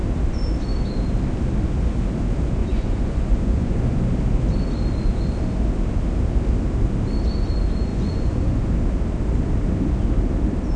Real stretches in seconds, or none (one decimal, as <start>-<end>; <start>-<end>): 0.0-2.6; 3.8-7.9; 8.7-10.8